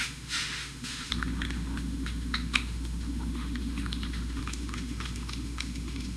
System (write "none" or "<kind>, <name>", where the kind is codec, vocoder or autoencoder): autoencoder, DAC-VAE